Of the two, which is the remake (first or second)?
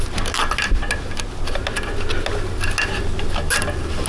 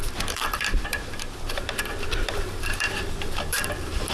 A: second